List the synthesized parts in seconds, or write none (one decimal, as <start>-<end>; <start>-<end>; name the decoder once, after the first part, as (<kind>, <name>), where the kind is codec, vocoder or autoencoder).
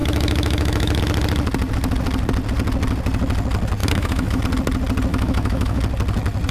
0.0-1.0 (autoencoder, DAC-VAE); 3.8-4.4; 5.1-5.8